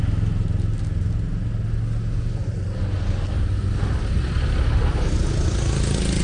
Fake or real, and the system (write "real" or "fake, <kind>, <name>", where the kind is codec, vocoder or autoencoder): real